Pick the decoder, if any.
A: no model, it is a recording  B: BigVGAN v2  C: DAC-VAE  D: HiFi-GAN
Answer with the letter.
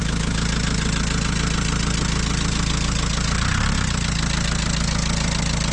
A